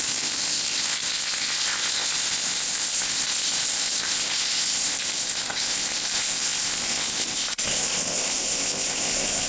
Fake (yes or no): yes